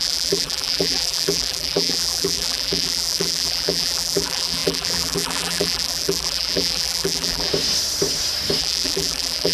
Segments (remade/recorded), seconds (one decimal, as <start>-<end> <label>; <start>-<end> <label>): 0.0-7.5 remade; 7.5-8.6 recorded; 8.6-9.5 remade